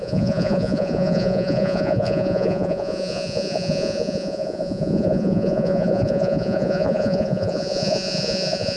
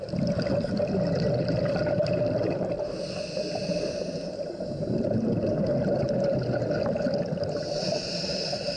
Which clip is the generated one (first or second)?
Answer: first